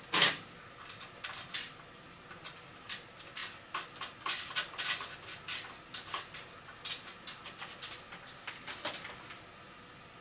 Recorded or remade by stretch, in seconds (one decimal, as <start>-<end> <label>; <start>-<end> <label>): 0.0-10.2 recorded